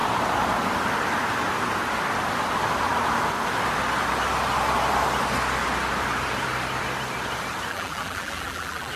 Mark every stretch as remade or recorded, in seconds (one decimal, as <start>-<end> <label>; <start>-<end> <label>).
0.0-7.7 recorded; 7.7-9.0 remade